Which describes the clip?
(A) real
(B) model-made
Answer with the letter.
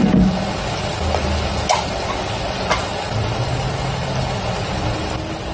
A